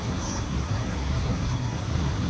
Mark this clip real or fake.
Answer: fake